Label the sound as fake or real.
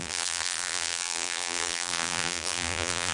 fake